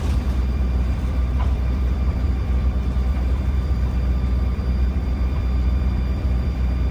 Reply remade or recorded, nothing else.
remade